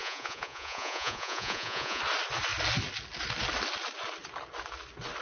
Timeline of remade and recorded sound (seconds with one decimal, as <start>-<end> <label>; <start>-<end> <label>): 0.0-2.0 remade; 2.0-5.2 recorded